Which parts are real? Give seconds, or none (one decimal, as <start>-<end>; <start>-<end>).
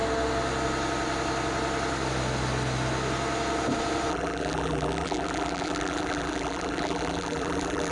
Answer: 0.0-4.1